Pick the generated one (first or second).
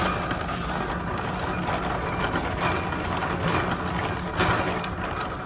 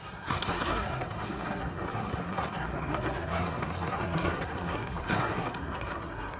second